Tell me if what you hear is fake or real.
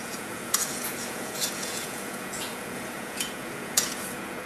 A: fake